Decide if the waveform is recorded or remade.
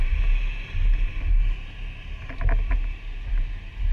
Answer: recorded